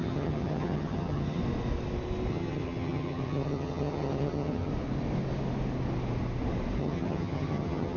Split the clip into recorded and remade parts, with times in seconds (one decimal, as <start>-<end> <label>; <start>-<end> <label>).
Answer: 0.0-1.4 remade; 1.4-2.3 recorded; 2.3-4.7 remade; 4.7-6.8 recorded; 6.8-8.0 remade